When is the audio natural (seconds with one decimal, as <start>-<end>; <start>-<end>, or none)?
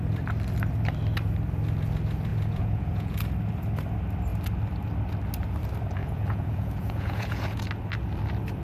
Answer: 0.0-2.3; 3.2-6.0; 7.6-8.6